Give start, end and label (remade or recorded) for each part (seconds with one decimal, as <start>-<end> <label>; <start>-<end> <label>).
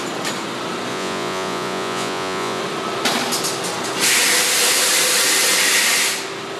0.0-0.9 recorded; 0.9-2.6 remade; 2.6-6.6 recorded